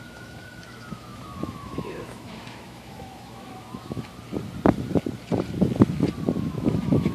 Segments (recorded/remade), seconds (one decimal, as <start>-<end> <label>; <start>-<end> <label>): 0.0-4.1 remade; 4.1-6.4 recorded; 6.4-7.1 remade